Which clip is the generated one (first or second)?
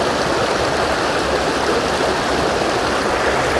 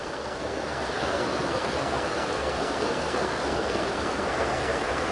second